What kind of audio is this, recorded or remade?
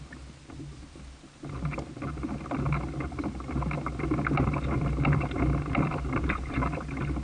recorded